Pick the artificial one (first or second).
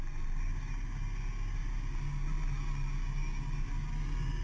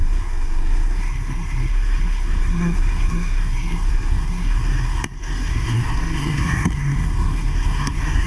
second